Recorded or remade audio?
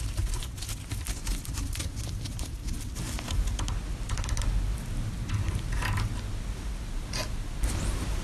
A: recorded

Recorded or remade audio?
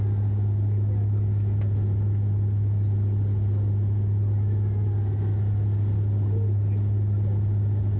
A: recorded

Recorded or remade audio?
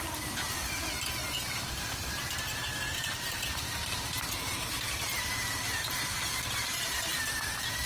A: remade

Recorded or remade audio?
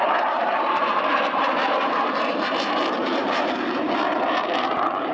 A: remade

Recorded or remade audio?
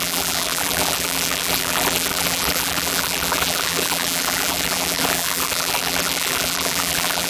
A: remade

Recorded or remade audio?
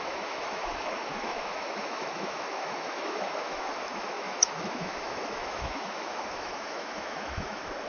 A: remade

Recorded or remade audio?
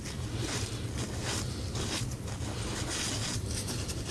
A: recorded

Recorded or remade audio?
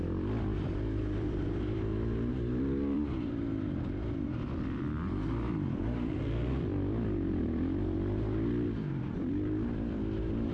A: remade